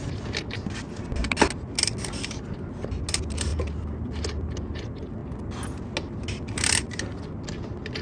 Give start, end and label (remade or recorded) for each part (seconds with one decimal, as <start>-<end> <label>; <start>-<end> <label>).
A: 0.0-8.0 recorded

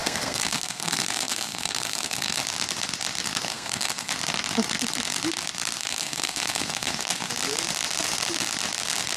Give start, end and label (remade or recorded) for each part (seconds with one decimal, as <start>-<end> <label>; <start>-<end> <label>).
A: 0.0-2.4 remade; 2.4-3.5 recorded; 3.5-4.1 remade; 4.1-5.8 recorded; 5.8-7.3 remade; 7.3-9.2 recorded